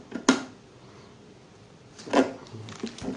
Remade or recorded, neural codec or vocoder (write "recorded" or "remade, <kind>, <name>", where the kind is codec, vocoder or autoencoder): recorded